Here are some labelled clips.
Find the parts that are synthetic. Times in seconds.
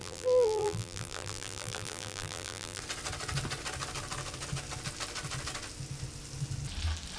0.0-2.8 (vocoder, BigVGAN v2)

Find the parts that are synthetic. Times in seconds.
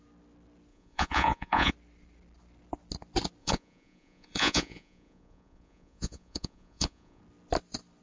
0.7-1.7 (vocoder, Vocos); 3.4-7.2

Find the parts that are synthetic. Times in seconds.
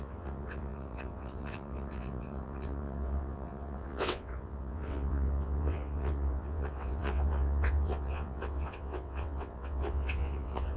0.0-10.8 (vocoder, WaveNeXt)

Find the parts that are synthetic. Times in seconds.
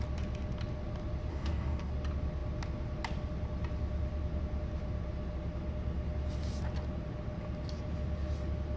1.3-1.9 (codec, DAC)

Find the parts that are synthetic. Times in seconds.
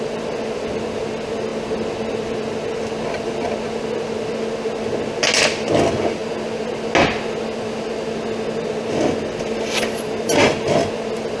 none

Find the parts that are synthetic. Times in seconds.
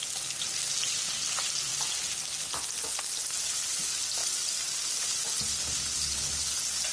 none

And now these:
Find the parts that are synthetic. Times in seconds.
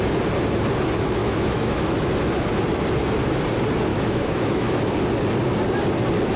1.2-2.1 (autoencoder, DAC-VAE); 3.9-4.8